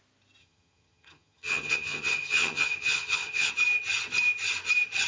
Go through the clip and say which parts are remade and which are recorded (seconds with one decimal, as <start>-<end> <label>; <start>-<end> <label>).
0.0-0.4 recorded; 0.4-3.5 remade; 3.5-5.1 recorded